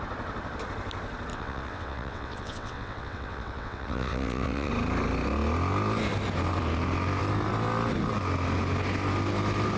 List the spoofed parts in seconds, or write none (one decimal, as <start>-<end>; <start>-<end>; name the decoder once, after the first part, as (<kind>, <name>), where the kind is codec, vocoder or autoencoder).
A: 1.3-4.7 (vocoder, WaveNeXt)